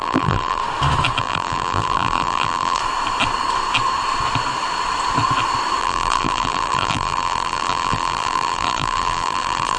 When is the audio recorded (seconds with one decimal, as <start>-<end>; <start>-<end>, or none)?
0.6-1.2; 2.8-5.8